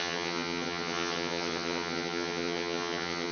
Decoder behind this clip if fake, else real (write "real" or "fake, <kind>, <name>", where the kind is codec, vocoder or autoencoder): fake, vocoder, HiFi-GAN